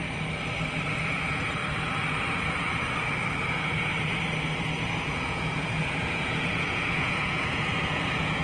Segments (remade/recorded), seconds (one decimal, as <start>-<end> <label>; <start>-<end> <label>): 0.0-1.0 recorded; 1.0-1.6 remade; 1.6-3.4 recorded; 3.4-3.9 remade; 3.9-4.8 recorded; 4.8-8.4 remade